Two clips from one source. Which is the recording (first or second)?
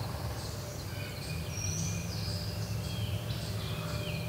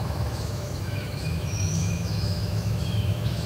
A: first